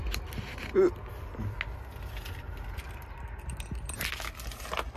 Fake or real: real